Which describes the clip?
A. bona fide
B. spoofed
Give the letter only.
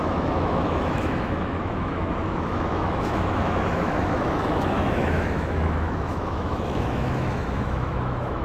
B